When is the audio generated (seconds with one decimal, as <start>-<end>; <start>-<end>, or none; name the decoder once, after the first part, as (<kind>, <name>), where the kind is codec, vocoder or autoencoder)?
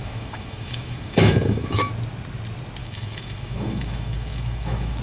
0.0-1.9 (autoencoder, DAC-VAE); 2.8-5.0